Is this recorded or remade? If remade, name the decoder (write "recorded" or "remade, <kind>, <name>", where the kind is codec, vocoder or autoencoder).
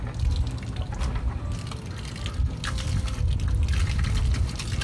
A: recorded